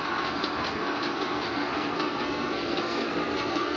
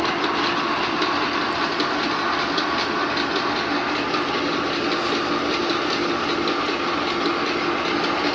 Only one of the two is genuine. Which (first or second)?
second